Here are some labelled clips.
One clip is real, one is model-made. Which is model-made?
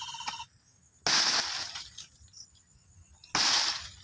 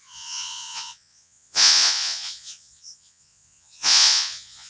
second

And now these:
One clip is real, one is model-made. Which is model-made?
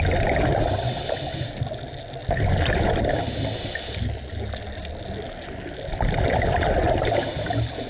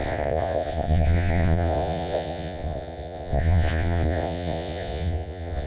second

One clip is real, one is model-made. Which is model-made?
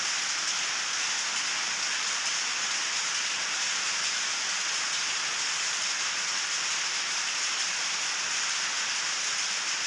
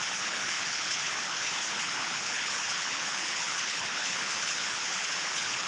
second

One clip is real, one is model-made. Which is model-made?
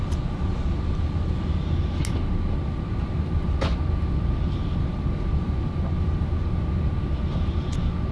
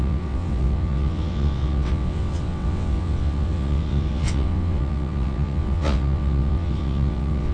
second